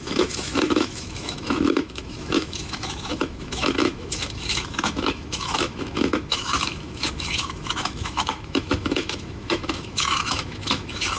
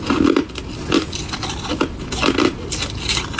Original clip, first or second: second